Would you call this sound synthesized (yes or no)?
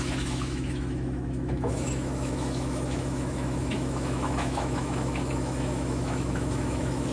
yes